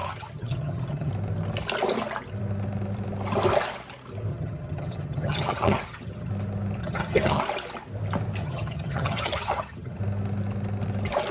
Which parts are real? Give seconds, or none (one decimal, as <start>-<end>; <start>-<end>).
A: 1.1-4.3; 6.3-6.8; 7.4-8.4; 10.0-11.3